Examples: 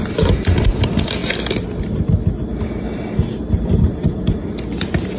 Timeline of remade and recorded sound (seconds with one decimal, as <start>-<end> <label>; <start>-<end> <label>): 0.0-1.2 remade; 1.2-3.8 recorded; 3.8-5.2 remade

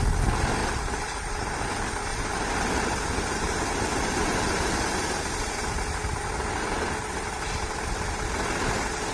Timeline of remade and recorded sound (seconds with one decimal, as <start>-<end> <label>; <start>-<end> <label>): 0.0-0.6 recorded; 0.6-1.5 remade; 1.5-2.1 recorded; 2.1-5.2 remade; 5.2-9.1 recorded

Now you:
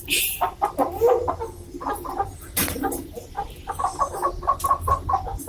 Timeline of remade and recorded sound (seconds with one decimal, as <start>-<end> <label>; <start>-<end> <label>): 0.0-1.6 recorded; 1.6-4.9 remade; 4.9-5.5 recorded

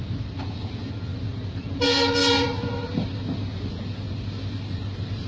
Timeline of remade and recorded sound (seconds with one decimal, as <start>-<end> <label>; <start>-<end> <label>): 0.0-5.3 recorded

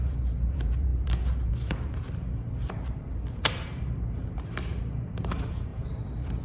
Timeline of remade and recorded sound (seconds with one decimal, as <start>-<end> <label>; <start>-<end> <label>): 0.0-6.4 remade

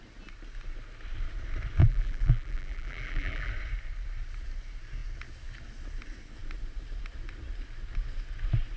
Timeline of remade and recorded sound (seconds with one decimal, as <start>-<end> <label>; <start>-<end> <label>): 0.0-1.8 recorded; 1.8-3.5 remade; 3.5-8.8 recorded

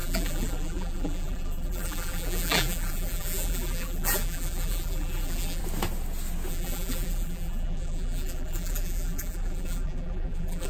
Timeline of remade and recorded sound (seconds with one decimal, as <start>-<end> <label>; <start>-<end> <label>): 0.0-5.6 remade; 5.6-6.5 recorded; 6.5-10.7 remade